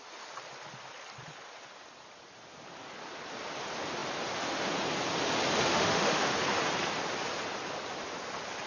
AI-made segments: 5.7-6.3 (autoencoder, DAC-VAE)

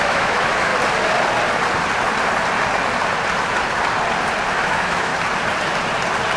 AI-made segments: 0.0-0.7 (autoencoder, DAC-VAE); 4.5-5.1

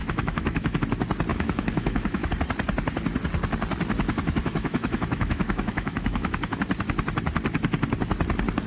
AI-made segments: 0.0-0.8 (autoencoder, DAC-VAE); 1.3-2.3; 4.4-6.6

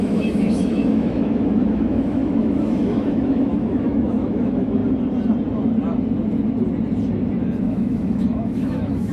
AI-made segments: 0.0-4.8 (autoencoder, DAC-VAE); 7.6-9.1

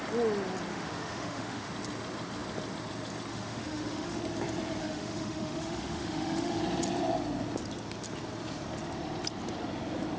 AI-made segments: 0.7-1.7 (autoencoder, DAC-VAE); 3.3-4.2; 4.8-6.6

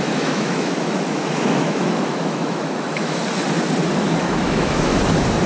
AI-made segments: 0.0-3.2 (autoencoder, DAC-VAE); 4.2-4.9